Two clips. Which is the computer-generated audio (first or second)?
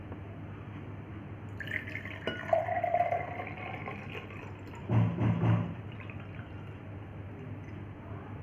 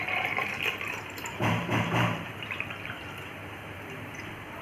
second